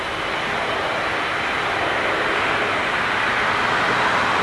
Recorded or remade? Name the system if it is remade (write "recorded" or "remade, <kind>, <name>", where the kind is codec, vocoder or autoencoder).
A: recorded